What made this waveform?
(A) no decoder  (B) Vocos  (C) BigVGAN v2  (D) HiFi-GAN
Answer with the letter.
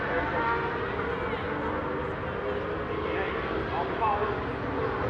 A